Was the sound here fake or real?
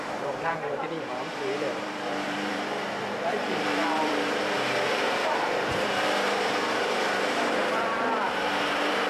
fake